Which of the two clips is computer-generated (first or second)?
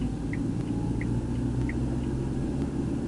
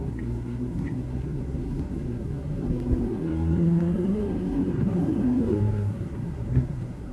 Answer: second